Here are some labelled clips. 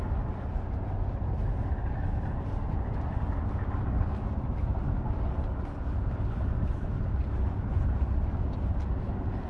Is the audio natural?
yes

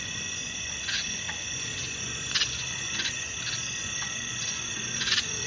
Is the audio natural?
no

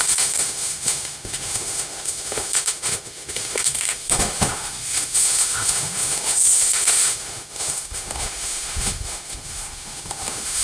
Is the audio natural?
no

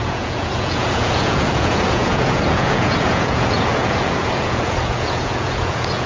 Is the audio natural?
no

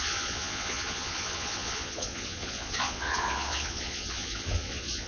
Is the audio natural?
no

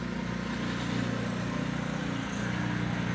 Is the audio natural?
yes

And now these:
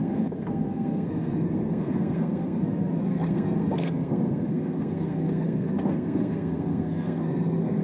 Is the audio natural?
no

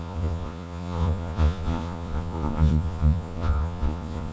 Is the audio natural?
no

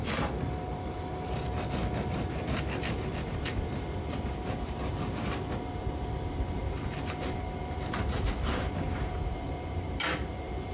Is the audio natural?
no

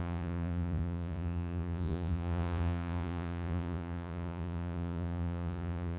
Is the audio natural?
no